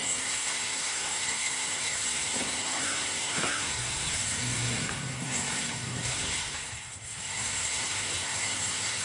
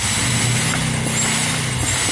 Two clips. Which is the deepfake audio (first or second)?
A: first